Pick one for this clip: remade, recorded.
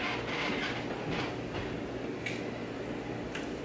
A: recorded